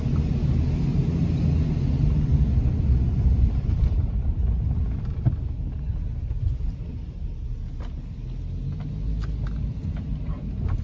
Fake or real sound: real